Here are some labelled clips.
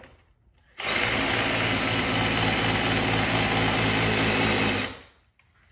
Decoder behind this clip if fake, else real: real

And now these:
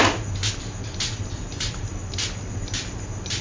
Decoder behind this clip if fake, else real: real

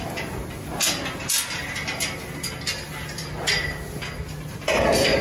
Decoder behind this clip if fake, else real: real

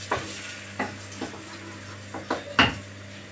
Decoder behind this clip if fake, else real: real